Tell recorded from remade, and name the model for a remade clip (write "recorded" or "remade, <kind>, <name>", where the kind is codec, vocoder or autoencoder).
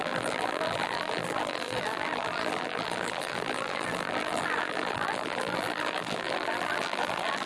remade, vocoder, BigVGAN v2